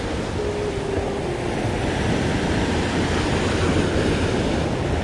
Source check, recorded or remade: recorded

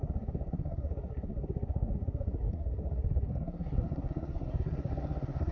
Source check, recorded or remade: remade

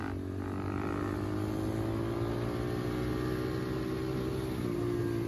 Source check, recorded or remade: recorded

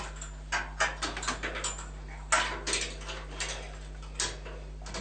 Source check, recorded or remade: recorded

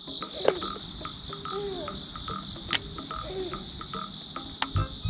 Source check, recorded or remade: recorded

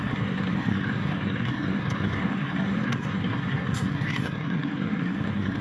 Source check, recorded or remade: remade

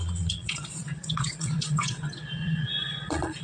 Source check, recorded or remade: remade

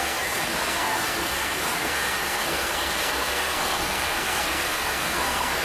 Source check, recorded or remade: remade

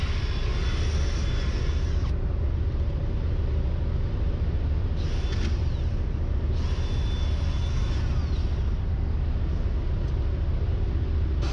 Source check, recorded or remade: recorded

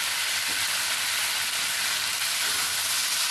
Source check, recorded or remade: recorded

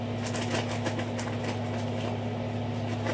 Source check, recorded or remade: recorded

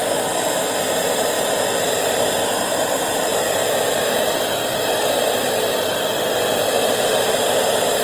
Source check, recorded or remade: recorded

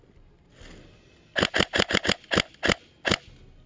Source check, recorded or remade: recorded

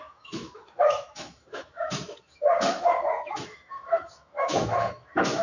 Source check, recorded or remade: remade